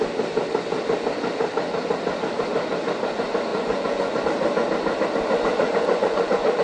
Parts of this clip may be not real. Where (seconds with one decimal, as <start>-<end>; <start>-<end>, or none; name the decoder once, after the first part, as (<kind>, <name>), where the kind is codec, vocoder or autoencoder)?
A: 3.5-4.2 (vocoder, Vocos); 5.5-6.6